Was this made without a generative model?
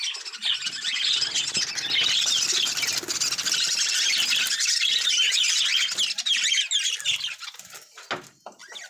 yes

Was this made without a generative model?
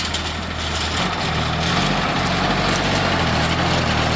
yes